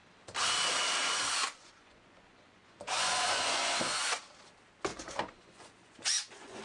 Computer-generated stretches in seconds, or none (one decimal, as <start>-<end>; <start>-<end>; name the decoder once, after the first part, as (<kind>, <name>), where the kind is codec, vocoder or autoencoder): 1.0-4.2 (vocoder, Vocos); 4.9-6.6

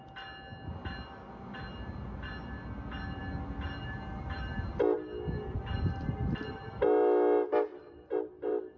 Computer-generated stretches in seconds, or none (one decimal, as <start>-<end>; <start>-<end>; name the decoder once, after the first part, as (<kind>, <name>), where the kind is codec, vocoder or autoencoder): 7.7-8.8 (vocoder, BigVGAN v2)